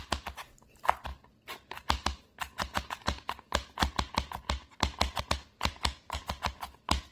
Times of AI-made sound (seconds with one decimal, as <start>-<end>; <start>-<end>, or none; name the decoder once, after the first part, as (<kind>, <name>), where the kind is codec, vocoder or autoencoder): 5.7-6.2 (codec, DAC)